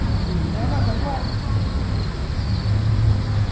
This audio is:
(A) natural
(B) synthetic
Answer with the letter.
A